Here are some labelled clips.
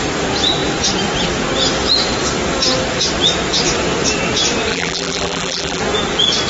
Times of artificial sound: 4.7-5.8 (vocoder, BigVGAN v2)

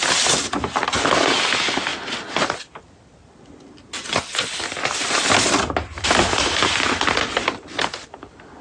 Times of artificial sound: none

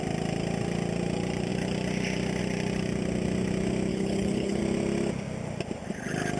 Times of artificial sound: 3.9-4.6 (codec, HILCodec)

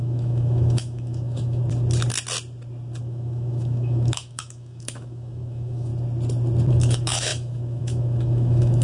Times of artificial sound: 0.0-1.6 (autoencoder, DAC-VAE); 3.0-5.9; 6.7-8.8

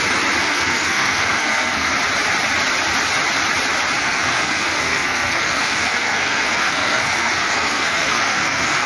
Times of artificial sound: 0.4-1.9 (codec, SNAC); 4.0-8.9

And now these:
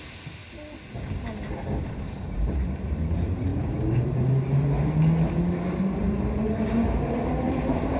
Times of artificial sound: 0.0-0.4 (vocoder, BigVGAN v2); 1.8-3.5; 5.7-8.0

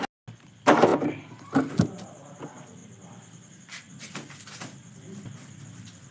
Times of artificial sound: none

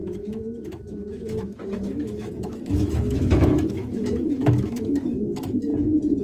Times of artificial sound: 0.0-5.7 (autoencoder, DAC-VAE)